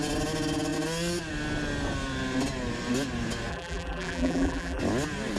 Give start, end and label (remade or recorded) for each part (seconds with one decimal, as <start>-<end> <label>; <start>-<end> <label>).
0.0-3.5 recorded; 3.5-4.8 remade; 4.8-5.4 recorded